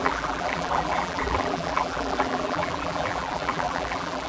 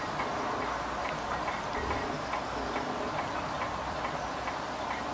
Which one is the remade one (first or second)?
first